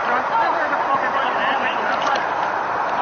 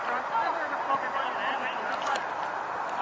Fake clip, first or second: first